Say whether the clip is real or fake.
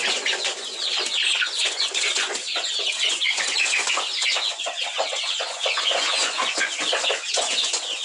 fake